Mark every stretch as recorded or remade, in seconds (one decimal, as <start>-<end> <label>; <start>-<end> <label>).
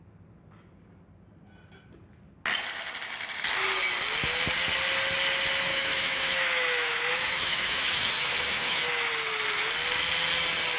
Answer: 0.0-5.7 recorded; 5.7-9.1 remade; 9.1-10.8 recorded